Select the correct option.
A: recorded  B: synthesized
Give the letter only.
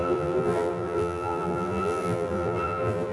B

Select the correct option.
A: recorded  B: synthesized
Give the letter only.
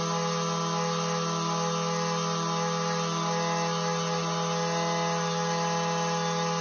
A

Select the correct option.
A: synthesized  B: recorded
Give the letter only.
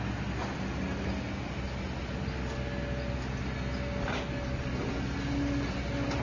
B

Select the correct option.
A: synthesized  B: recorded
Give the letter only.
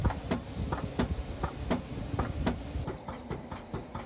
A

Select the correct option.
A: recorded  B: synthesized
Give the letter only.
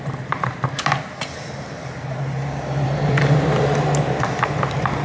B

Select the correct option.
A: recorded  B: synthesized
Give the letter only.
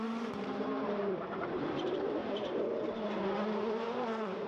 B